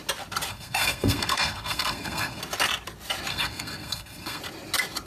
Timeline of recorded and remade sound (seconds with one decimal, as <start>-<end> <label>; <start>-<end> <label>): 0.0-0.5 recorded; 0.5-2.4 remade; 2.4-3.3 recorded; 3.3-4.4 remade; 4.4-5.1 recorded